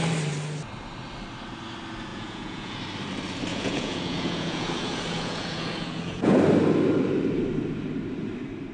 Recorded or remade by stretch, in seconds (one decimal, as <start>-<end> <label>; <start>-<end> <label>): 0.0-2.1 recorded; 2.1-2.8 remade; 2.8-3.5 recorded; 3.5-6.4 remade; 6.4-8.7 recorded